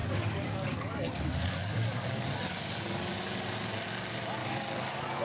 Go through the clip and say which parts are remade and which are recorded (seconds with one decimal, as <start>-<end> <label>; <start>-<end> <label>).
0.0-3.1 remade; 3.1-4.4 recorded; 4.4-5.2 remade